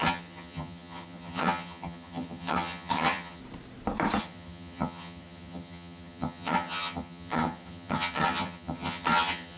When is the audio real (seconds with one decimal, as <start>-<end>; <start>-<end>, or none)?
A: 3.4-4.2